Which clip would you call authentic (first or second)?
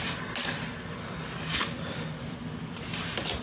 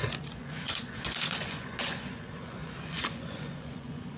first